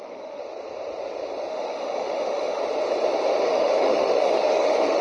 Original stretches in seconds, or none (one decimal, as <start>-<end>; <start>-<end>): 0.4-1.5; 2.6-3.4